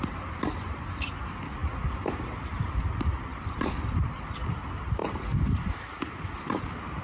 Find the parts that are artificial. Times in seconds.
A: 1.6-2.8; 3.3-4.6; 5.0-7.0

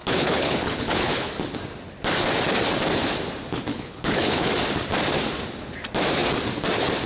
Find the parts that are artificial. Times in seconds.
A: 0.0-1.3; 3.7-4.5

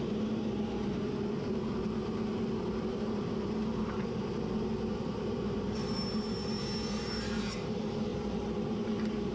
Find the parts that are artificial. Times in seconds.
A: 0.0-9.3

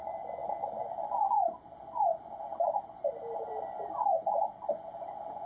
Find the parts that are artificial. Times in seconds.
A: none

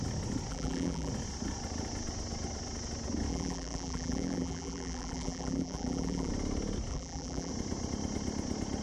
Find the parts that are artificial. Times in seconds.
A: 0.5-1.1; 3.3-6.3; 6.9-7.5

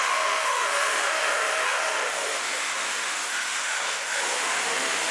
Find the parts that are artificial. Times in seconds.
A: 0.0-5.1

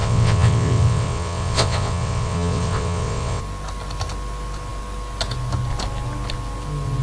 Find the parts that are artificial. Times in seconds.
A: 0.0-3.4

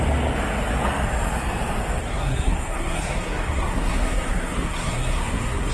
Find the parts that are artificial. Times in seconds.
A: 2.0-5.7